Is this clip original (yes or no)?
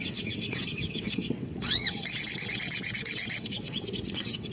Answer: no